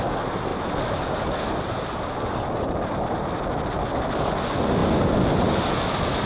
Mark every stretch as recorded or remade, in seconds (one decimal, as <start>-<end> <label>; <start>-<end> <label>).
0.0-6.3 recorded